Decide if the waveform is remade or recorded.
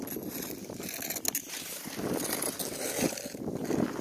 recorded